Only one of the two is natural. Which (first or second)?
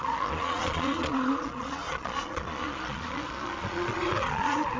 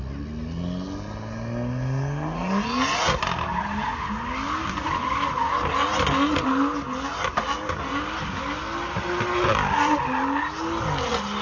second